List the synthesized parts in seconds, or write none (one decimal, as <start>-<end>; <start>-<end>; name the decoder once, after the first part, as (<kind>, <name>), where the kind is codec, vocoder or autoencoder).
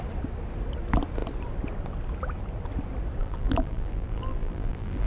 3.2-5.1 (vocoder, BigVGAN v2)